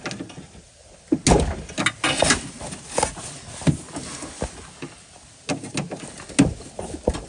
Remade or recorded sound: recorded